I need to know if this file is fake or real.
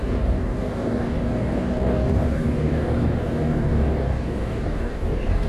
fake